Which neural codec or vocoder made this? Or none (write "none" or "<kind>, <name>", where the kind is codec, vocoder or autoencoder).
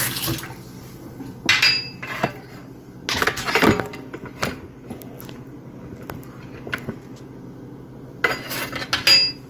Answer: none